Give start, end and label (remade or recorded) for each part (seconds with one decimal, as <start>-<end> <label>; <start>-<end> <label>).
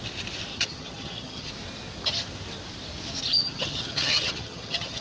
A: 0.0-0.5 recorded; 0.5-1.5 remade; 1.5-3.3 recorded; 3.3-5.0 remade